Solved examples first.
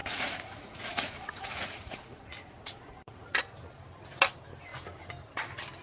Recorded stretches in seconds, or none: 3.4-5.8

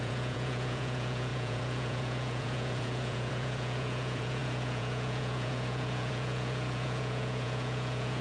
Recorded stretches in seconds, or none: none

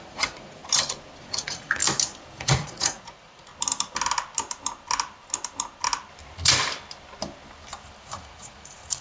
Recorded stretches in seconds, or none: 0.6-1.2; 1.8-2.4; 3.5-8.0